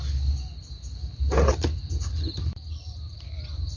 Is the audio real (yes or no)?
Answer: yes